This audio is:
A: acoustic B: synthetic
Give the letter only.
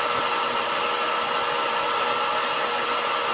A